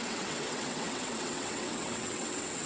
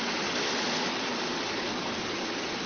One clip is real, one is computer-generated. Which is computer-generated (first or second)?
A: first